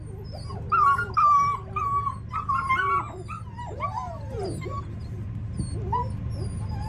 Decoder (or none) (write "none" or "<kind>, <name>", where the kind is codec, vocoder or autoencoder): none